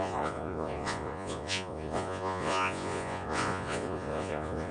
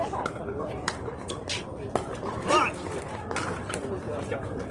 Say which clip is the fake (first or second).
first